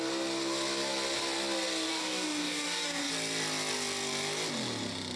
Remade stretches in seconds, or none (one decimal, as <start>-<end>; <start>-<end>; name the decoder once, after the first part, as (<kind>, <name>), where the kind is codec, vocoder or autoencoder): 1.9-3.1 (codec, DAC)